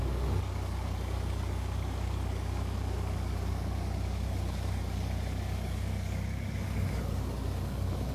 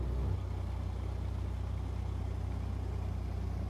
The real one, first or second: second